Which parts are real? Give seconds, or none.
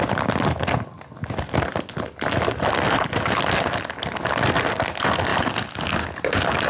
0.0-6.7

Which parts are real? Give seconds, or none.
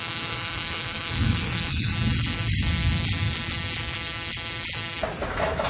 1.9-5.3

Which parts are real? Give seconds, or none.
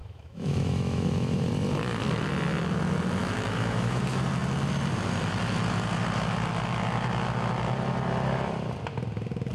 1.5-3.2; 4.0-9.5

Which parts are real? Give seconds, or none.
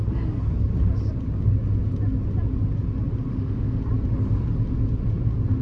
0.0-3.3; 3.8-5.6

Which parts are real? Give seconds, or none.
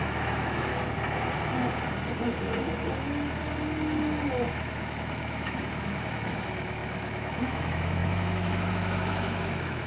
0.7-4.5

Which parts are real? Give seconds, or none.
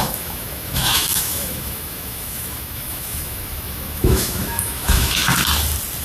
5.2-6.0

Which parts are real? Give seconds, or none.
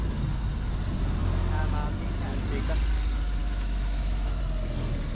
0.0-3.4; 4.4-5.1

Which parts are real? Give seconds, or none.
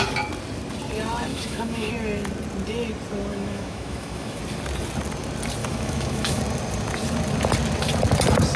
0.0-1.3; 1.9-3.3; 4.4-5.6; 6.4-8.6